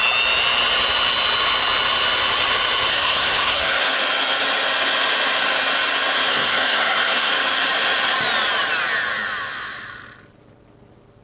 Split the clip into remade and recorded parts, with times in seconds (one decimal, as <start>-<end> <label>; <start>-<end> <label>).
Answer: 0.0-2.9 recorded; 2.9-3.8 remade; 3.8-6.3 recorded; 6.3-7.3 remade; 7.3-11.2 recorded